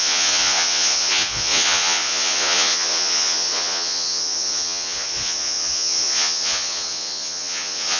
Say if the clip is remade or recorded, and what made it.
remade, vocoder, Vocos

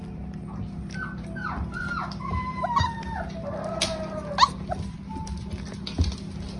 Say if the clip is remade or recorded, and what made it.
recorded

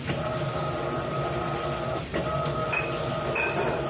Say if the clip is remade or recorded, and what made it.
recorded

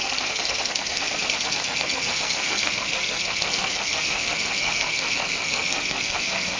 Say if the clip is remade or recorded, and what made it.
remade, codec, SNAC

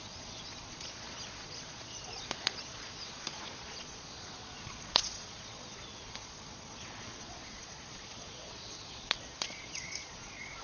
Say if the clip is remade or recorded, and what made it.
remade, vocoder, Vocos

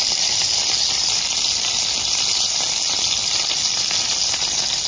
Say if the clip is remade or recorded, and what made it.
recorded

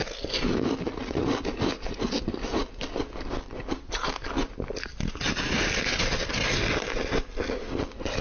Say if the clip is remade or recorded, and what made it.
recorded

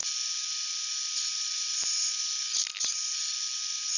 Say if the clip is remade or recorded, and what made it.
recorded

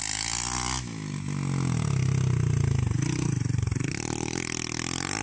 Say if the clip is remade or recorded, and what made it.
recorded